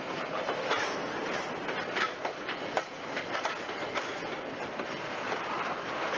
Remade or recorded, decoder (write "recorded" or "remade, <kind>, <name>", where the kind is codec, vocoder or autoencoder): recorded